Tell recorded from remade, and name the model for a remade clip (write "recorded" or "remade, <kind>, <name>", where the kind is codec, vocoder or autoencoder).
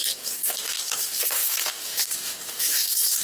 remade, codec, DAC